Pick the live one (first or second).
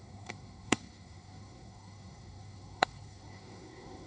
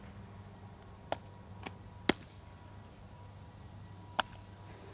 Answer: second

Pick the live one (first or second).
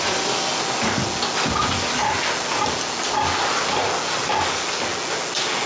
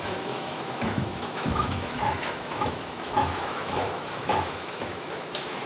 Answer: first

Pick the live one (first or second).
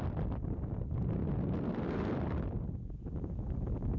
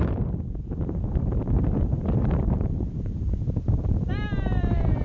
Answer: first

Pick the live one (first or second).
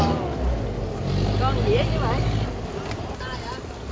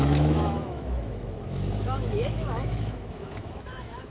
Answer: first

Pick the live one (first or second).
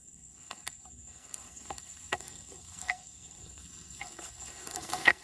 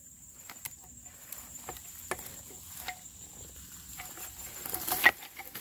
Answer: second